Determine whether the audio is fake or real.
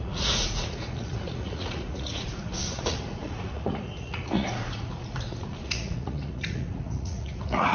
fake